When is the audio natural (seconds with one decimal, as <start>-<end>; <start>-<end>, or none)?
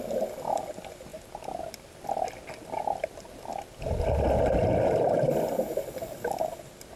0.0-7.0